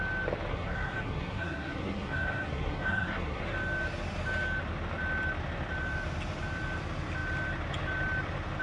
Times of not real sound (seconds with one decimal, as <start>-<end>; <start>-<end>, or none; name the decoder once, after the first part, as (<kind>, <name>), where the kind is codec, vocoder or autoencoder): 0.5-3.4 (codec, SNAC)